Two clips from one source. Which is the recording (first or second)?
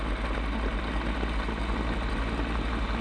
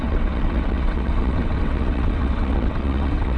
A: first